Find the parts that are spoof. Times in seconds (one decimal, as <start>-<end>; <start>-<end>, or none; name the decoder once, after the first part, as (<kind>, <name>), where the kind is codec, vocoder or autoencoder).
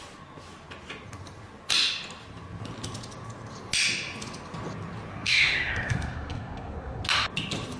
5.1-7.0 (codec, SNAC)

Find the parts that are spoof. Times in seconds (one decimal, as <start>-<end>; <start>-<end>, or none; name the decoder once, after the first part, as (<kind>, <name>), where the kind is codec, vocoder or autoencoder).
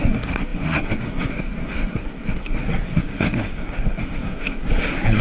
0.0-5.2 (codec, SNAC)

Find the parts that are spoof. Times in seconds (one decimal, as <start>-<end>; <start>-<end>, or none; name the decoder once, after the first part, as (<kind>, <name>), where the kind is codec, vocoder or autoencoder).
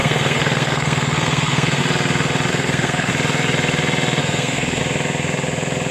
0.0-1.8 (codec, SNAC); 2.5-3.1; 4.2-4.8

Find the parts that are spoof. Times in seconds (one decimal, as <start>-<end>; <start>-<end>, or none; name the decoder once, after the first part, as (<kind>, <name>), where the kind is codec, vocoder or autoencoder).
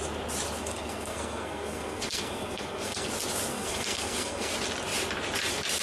0.6-3.1 (codec, SNAC); 3.5-4.5